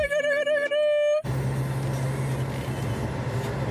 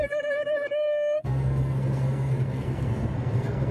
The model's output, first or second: second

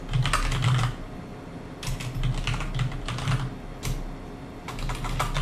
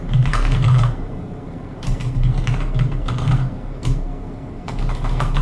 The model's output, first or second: second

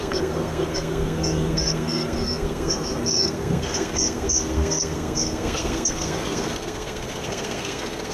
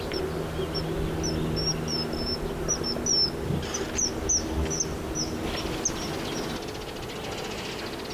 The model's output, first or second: first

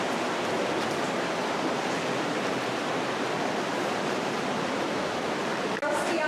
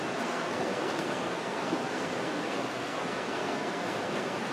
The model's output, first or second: second